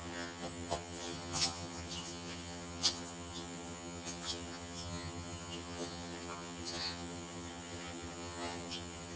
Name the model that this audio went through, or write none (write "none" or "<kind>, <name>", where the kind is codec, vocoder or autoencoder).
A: vocoder, HiFi-GAN